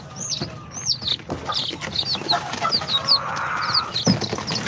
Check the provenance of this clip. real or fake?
real